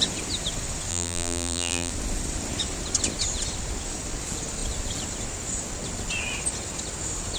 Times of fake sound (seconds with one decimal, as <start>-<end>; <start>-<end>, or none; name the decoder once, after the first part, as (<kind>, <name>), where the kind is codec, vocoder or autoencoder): 0.9-1.9 (vocoder, BigVGAN v2)